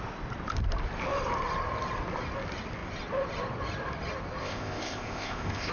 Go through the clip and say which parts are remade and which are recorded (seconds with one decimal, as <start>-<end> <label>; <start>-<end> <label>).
0.0-4.4 recorded; 4.4-5.7 remade